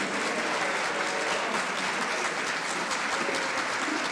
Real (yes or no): yes